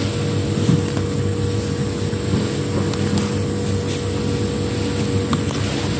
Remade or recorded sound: recorded